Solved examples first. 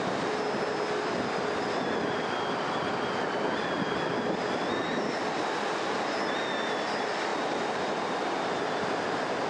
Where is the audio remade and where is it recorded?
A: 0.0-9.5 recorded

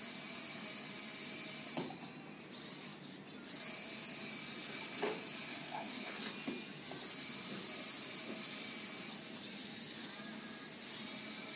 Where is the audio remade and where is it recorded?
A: 0.0-5.5 recorded; 5.5-6.1 remade; 6.1-11.6 recorded